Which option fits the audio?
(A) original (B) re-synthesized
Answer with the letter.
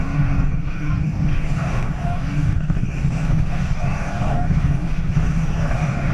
B